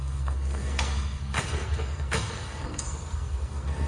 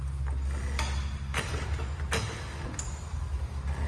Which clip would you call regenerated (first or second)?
first